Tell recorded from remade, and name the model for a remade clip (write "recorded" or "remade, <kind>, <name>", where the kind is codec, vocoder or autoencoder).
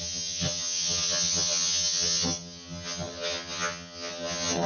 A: remade, vocoder, HiFi-GAN